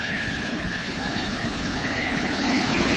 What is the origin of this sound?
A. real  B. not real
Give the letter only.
B